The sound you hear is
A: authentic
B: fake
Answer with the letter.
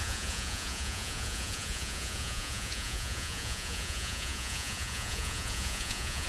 B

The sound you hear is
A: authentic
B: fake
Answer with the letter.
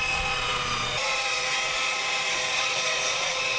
B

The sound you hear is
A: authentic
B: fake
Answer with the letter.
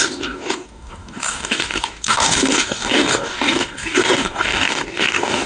B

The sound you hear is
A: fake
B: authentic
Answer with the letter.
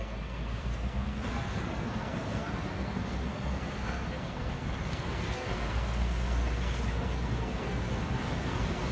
A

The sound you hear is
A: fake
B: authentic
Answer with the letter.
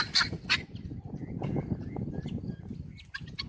B